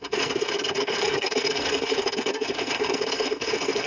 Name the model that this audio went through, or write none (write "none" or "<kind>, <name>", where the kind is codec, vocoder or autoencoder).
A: codec, SNAC